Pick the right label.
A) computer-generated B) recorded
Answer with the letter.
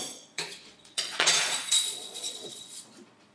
A